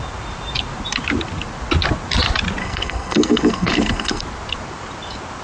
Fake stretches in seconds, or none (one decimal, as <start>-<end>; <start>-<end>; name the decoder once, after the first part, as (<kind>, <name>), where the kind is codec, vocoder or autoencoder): 2.6-4.2 (codec, SNAC)